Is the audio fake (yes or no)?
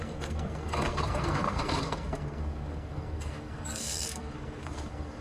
yes